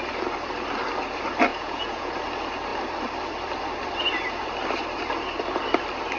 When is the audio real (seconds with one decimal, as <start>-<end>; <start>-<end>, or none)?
0.0-1.5; 2.1-6.2